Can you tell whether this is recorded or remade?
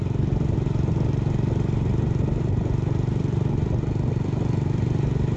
recorded